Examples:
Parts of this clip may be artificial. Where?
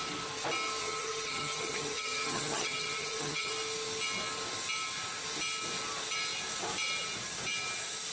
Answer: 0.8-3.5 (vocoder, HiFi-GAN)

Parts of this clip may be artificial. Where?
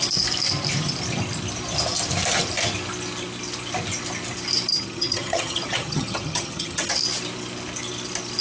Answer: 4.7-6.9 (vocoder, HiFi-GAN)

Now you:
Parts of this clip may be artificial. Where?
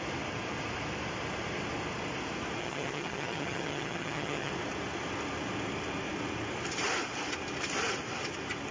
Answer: 2.6-4.5 (vocoder, HiFi-GAN)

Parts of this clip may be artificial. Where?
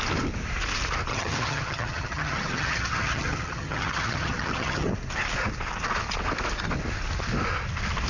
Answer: 1.1-4.9 (vocoder, HiFi-GAN)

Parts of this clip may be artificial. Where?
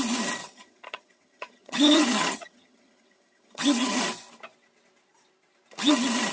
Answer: 0.4-4.0 (vocoder, HiFi-GAN)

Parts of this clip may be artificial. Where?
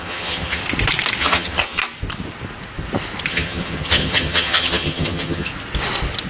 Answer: 0.0-0.6 (vocoder, HiFi-GAN); 1.2-1.8; 3.3-5.5